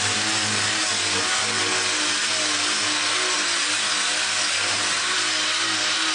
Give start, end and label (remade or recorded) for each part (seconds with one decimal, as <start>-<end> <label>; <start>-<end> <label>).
0.0-6.1 recorded